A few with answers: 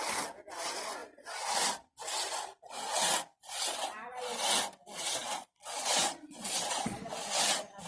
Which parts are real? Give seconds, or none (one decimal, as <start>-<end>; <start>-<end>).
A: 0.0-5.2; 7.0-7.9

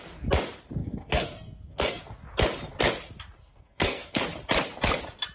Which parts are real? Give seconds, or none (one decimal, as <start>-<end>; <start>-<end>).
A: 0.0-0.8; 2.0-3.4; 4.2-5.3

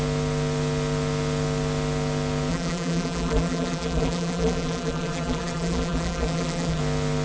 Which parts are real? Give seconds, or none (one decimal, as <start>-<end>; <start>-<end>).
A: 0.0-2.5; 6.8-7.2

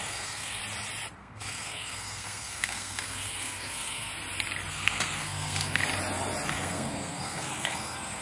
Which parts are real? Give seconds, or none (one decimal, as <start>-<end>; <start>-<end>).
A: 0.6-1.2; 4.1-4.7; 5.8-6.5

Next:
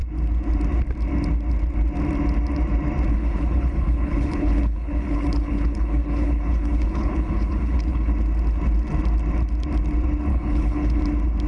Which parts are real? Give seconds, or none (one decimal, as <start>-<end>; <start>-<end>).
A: 0.0-3.1; 8.1-10.3; 11.0-11.5

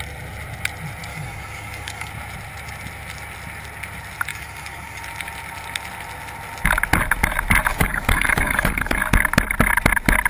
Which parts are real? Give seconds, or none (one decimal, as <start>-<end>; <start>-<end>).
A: 0.0-1.1; 2.1-4.3; 5.0-7.7; 9.0-10.3

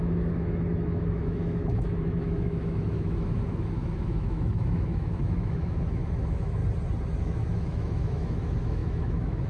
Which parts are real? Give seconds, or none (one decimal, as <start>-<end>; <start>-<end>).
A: 6.6-7.2

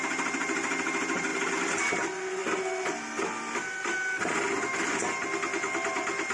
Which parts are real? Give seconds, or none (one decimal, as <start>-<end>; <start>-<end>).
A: 0.0-6.3